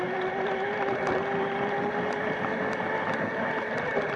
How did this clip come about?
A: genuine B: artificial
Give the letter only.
A